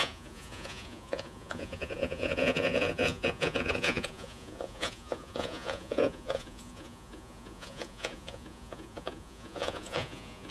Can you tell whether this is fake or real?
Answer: fake